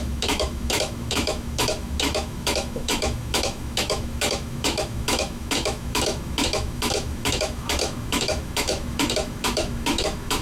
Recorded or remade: remade